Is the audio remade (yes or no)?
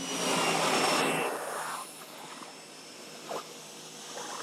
no